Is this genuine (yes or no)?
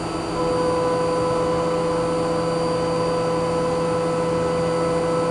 yes